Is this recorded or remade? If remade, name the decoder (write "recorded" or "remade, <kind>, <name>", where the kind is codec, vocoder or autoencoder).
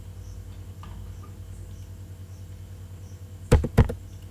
recorded